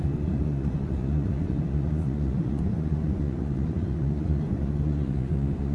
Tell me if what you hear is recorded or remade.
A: remade